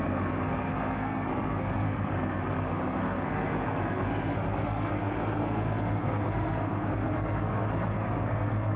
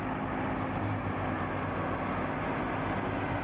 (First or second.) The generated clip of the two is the first